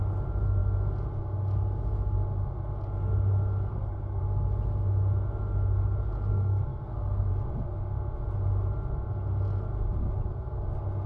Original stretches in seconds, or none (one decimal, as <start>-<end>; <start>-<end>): 0.0-3.7; 4.2-6.3; 7.3-11.1